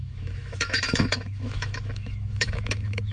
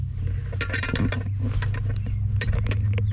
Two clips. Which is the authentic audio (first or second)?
second